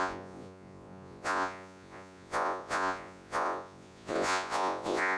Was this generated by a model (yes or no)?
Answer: yes